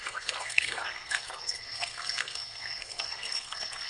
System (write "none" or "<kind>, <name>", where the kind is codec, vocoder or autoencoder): codec, SNAC